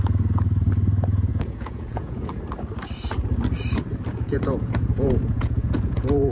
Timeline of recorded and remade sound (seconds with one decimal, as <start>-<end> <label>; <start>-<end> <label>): 0.0-1.3 recorded; 1.3-2.4 remade; 2.4-4.1 recorded; 4.1-6.3 remade